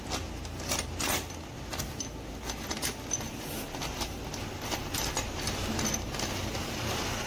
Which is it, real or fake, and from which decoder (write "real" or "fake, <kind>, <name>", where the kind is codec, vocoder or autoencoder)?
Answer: real